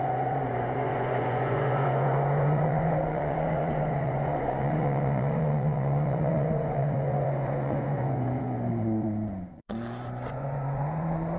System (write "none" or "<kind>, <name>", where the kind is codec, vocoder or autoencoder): vocoder, Vocos